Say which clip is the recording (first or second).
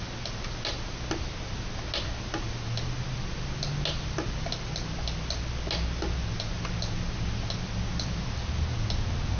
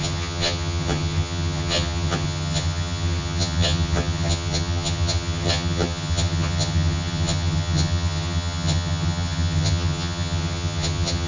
first